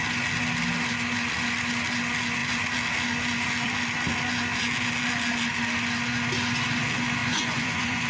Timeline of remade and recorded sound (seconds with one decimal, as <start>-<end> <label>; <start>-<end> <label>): 0.0-7.2 recorded; 7.2-8.1 remade